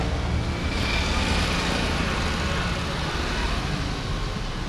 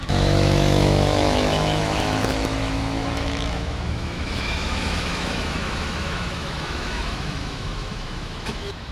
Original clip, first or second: first